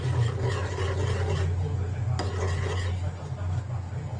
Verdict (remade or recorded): recorded